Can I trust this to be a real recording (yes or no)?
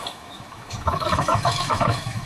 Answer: no